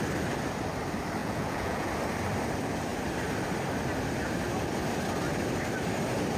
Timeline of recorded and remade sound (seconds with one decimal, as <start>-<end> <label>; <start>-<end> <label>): 0.0-1.2 recorded; 1.2-1.9 remade; 1.9-6.4 recorded